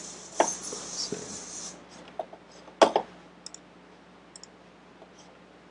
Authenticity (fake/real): real